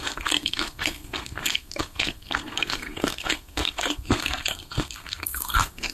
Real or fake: fake